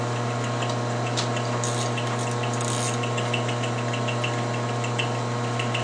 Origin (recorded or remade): recorded